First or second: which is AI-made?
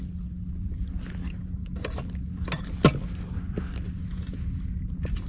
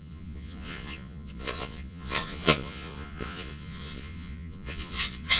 second